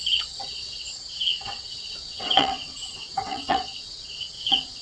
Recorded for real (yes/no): no